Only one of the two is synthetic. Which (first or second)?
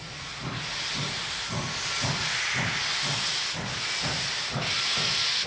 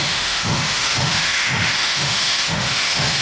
second